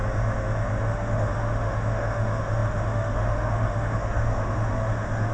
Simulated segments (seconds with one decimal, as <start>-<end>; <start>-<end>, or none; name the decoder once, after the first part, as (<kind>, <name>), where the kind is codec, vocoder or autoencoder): 0.8-5.3 (autoencoder, DAC-VAE)